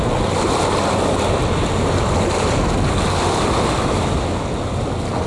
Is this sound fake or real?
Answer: real